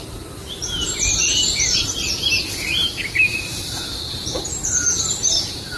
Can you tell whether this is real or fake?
fake